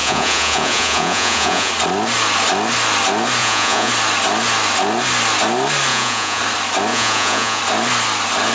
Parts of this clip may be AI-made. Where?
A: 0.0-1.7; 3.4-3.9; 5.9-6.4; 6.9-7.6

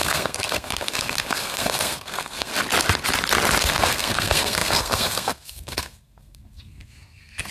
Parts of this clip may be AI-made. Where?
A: 0.0-2.5; 3.6-7.5

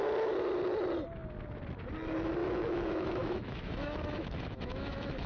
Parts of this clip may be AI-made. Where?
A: 2.4-5.3